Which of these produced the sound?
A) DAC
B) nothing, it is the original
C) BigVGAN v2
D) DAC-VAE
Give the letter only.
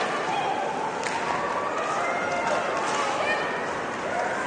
B